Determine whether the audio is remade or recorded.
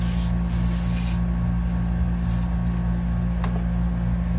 recorded